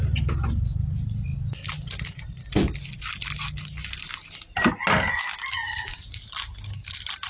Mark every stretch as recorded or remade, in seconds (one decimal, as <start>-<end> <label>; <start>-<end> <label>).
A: 0.0-7.3 recorded